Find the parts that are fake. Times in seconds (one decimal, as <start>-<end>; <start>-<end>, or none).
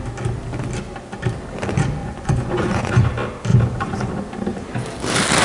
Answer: 2.0-3.1; 3.5-4.1